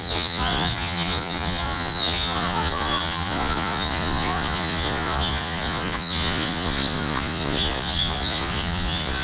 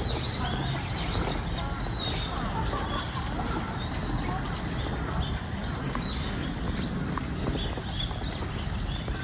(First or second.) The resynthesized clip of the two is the first